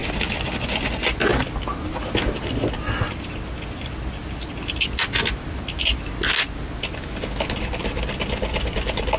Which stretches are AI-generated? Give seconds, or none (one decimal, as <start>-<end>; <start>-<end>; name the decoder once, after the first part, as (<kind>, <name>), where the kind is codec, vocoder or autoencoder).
none